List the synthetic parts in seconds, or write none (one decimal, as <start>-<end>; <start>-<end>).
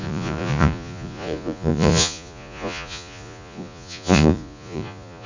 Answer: 0.0-5.3